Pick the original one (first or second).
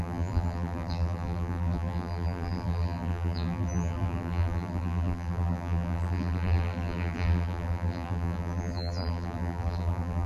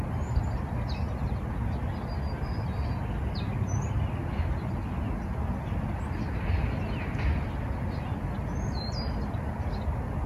second